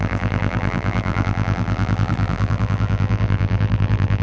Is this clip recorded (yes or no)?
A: no